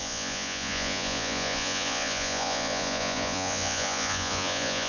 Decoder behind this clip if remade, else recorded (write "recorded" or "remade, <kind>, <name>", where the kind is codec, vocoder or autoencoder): remade, vocoder, Vocos